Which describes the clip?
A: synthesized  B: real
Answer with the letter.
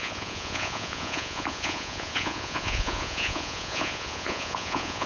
A